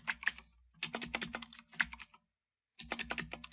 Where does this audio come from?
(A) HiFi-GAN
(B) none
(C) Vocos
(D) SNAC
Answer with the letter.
B